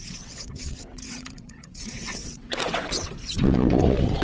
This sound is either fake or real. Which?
fake